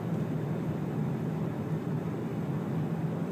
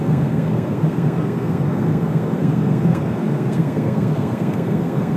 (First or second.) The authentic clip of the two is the first